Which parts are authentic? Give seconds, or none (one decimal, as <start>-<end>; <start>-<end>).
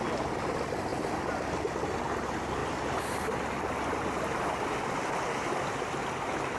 0.0-6.6